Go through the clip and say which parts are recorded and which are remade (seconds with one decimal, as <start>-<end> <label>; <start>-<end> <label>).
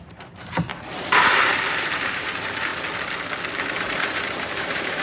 0.0-2.7 remade; 2.7-3.7 recorded; 3.7-5.0 remade